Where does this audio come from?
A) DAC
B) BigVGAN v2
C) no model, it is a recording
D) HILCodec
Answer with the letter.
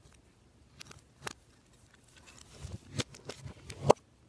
C